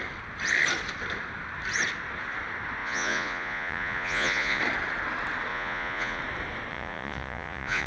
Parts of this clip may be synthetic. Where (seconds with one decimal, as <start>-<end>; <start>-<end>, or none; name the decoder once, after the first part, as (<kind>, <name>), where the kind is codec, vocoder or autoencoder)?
2.8-4.6 (vocoder, Vocos); 5.5-6.2; 6.7-7.9